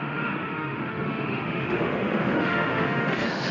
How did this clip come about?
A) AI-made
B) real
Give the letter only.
A